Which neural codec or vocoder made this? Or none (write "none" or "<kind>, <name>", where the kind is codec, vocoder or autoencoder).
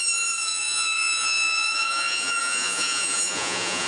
vocoder, Vocos